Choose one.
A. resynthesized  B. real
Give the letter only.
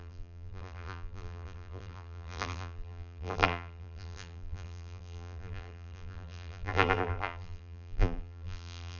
A